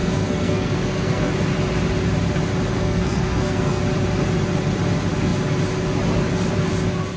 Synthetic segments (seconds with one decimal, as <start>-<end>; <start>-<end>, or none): 0.0-1.3; 2.7-3.8